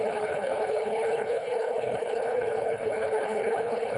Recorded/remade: remade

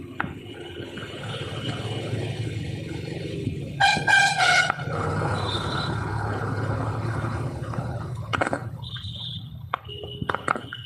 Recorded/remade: remade